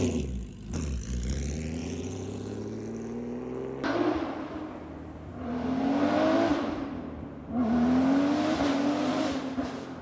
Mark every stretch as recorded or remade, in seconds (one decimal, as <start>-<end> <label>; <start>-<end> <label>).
0.0-1.8 recorded; 1.8-2.6 remade; 2.6-10.0 recorded